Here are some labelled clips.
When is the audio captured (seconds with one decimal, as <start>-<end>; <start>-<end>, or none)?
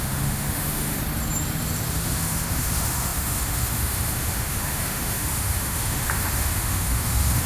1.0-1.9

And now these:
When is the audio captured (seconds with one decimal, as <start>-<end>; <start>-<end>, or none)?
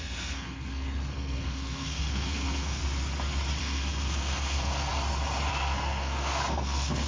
2.8-3.6; 4.9-5.5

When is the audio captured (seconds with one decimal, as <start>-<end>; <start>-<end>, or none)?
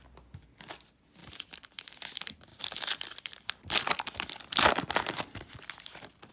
0.0-1.2; 2.0-2.5; 5.5-6.3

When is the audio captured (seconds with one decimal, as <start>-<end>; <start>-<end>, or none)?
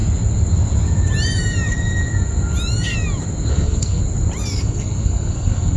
0.0-3.5; 4.0-4.6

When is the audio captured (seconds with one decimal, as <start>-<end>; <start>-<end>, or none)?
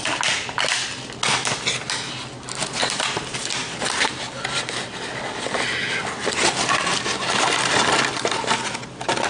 0.0-9.3